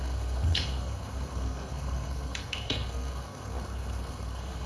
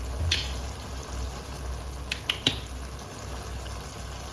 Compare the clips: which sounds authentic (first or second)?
second